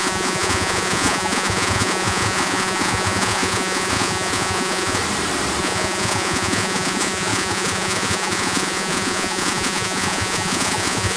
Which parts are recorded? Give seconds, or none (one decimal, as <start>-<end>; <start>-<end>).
5.0-5.6